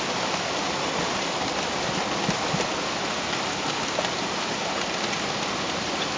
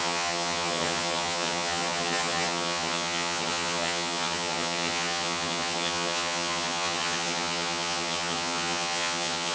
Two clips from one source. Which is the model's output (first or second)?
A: second